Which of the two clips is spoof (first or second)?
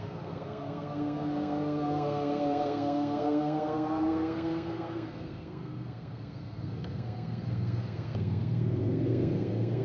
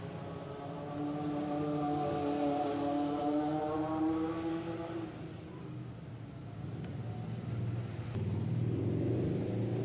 first